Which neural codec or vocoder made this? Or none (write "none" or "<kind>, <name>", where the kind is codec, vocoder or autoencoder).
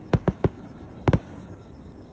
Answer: codec, DAC